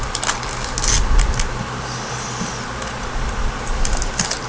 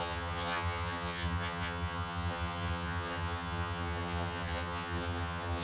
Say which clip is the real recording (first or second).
first